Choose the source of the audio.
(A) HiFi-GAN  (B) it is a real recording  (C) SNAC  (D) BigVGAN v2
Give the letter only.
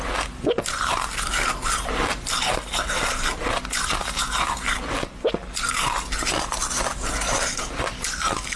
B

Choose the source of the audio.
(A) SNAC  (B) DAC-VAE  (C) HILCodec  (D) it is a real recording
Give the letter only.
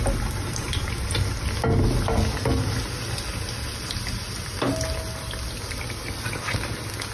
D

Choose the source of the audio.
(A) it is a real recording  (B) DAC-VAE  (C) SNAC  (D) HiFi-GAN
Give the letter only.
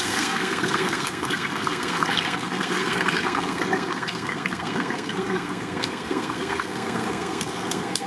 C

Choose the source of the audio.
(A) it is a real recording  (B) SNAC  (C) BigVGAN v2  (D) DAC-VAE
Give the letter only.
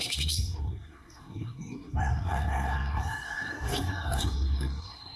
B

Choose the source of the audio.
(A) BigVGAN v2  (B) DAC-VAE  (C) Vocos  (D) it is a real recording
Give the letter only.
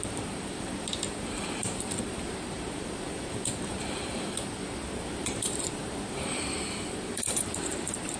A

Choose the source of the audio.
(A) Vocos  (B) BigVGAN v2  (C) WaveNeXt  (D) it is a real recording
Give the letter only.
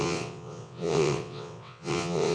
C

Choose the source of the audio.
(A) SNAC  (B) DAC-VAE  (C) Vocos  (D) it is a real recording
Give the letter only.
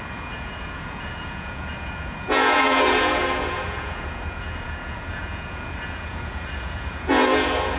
C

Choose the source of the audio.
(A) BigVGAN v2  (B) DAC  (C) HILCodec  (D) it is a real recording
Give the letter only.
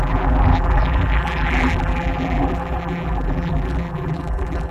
A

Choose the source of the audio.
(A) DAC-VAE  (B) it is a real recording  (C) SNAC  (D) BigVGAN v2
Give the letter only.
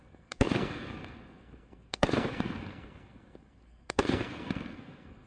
C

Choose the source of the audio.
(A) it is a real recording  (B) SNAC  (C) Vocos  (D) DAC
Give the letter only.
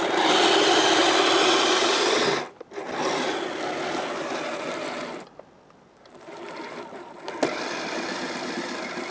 A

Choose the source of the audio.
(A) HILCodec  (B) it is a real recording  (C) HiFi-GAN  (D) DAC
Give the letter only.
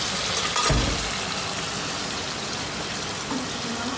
B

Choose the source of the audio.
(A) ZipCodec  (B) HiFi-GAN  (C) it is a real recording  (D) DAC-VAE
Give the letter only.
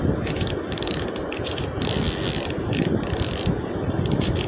C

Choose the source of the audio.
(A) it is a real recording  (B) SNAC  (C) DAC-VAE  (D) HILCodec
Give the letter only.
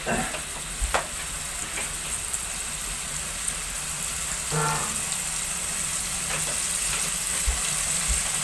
A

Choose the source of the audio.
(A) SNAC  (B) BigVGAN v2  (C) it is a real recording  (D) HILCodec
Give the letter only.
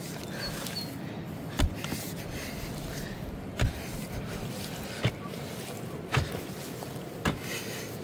C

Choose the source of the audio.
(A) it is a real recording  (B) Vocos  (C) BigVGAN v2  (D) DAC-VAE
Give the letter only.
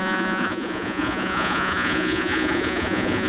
B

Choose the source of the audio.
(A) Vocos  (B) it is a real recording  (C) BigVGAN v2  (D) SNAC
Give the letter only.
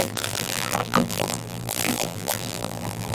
C